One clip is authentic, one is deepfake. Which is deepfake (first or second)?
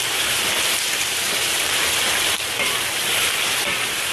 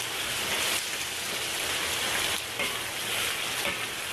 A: first